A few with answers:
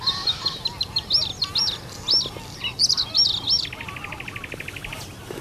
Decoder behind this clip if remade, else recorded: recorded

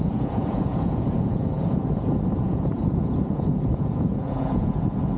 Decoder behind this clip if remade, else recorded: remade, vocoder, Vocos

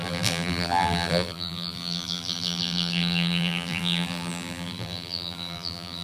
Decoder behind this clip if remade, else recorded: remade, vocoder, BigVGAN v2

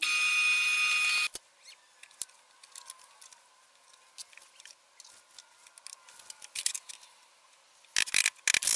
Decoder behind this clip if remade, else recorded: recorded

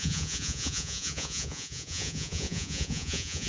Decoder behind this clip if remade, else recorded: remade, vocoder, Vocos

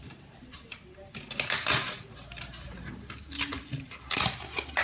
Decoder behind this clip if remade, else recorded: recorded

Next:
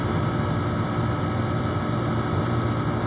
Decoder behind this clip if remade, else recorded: recorded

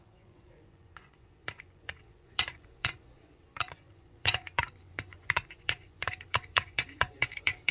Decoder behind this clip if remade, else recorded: remade, vocoder, Vocos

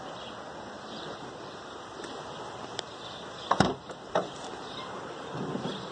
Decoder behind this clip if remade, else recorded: recorded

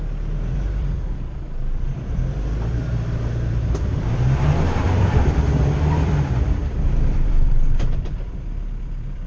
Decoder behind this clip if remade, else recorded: remade, vocoder, BigVGAN v2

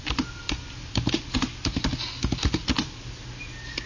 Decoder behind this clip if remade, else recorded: recorded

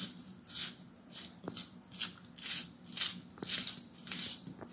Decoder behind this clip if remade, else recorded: recorded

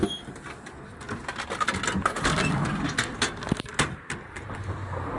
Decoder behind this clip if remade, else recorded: recorded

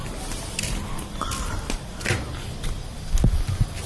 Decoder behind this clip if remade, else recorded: recorded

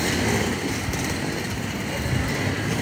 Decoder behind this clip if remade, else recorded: recorded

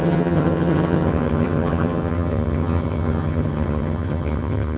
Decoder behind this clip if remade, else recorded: remade, vocoder, HiFi-GAN